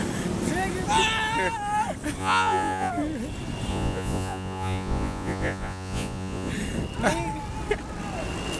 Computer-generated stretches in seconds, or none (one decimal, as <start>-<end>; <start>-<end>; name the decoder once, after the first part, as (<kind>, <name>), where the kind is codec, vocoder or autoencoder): 2.2-2.9 (vocoder, Vocos); 3.7-6.5